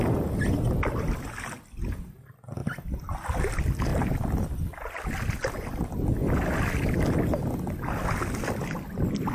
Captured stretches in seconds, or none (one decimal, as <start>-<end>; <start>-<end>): 0.0-9.3